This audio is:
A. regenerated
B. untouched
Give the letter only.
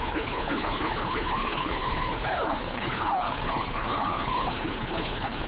A